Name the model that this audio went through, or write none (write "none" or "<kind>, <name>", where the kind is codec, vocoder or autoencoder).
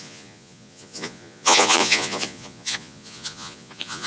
vocoder, Vocos